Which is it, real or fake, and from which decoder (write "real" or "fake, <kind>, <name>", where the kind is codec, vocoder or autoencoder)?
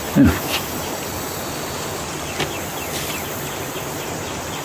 real